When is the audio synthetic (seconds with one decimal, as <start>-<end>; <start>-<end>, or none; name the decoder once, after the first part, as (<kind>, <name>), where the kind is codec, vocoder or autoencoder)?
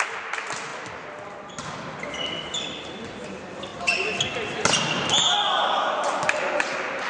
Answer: none